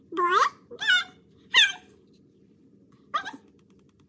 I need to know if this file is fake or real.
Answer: fake